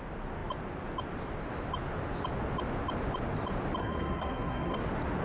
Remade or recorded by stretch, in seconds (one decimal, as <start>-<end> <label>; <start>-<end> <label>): 0.0-3.8 recorded; 3.8-4.8 remade; 4.8-5.2 recorded